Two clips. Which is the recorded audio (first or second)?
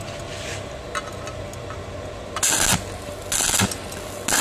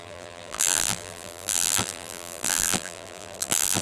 first